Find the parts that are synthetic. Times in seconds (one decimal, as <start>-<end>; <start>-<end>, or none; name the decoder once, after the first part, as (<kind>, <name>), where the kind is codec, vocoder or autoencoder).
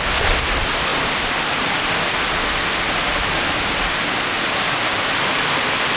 none